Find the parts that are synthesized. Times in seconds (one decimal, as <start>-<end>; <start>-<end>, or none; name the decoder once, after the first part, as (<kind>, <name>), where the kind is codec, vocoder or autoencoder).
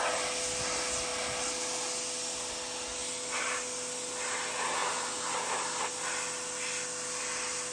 none